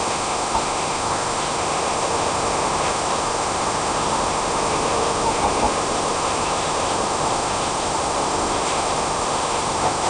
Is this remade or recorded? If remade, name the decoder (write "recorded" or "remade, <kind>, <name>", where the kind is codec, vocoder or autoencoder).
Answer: remade, autoencoder, DAC-VAE